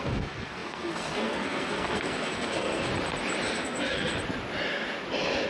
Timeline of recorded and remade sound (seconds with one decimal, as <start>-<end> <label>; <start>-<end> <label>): 0.0-2.9 remade; 2.9-3.5 recorded; 3.5-4.2 remade; 4.2-5.5 recorded